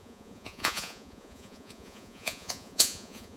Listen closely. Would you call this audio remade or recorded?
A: remade